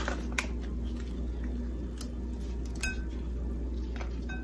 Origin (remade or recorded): recorded